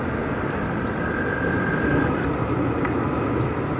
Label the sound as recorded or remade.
recorded